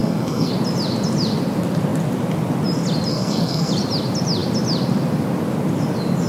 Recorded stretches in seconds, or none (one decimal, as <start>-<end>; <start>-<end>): 0.5-3.1; 3.7-6.3